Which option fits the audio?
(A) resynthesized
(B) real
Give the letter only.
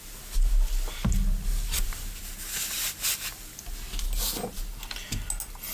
B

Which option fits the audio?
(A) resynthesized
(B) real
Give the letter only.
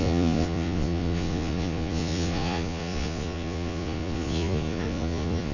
A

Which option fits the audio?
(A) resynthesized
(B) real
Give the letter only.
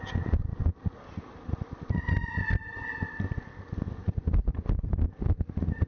B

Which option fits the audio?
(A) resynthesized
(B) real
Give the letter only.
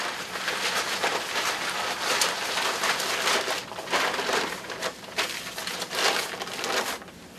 B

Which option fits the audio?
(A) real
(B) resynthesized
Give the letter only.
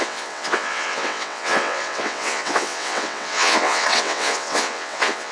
B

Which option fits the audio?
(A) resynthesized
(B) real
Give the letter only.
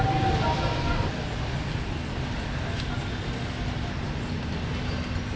B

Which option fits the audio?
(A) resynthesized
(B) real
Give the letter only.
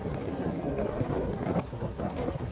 A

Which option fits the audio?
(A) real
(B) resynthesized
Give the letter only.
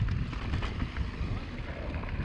A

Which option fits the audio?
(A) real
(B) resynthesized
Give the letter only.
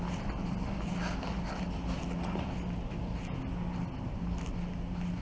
A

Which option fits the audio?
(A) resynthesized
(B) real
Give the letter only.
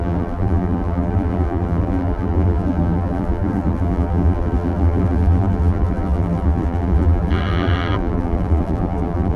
A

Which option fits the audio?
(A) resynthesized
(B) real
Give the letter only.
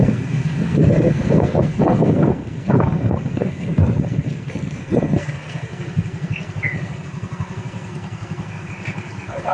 A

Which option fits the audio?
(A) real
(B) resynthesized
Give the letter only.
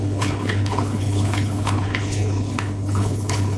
B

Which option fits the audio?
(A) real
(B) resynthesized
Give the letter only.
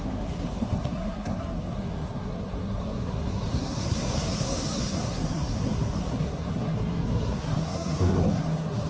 B